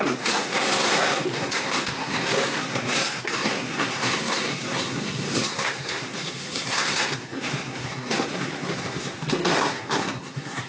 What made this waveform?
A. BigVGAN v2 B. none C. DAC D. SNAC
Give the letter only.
D